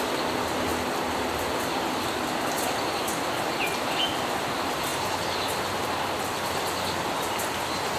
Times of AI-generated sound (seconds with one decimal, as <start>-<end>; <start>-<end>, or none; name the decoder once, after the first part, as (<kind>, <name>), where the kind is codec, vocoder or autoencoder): none